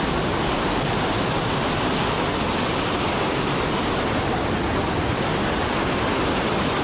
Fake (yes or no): no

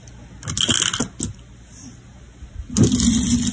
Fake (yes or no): no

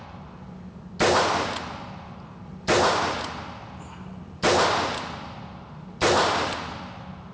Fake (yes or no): no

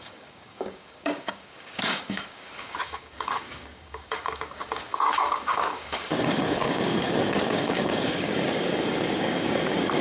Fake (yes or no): yes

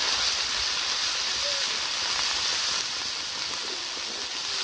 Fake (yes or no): no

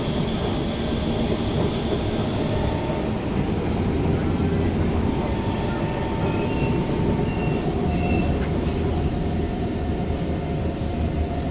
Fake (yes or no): no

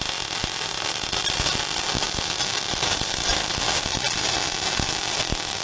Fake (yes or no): no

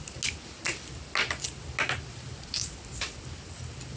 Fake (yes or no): no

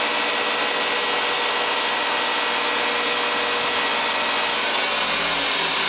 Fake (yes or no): no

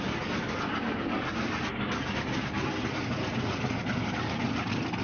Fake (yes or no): no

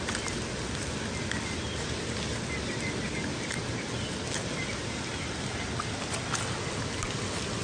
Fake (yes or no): no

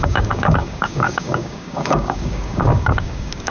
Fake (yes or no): yes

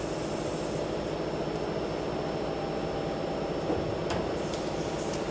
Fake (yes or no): no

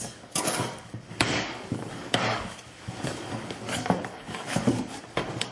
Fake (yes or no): yes